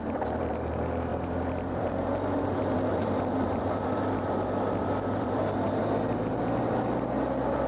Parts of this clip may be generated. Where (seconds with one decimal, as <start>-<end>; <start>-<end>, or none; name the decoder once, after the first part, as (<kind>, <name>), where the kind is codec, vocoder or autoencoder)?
1.1-5.4 (vocoder, BigVGAN v2)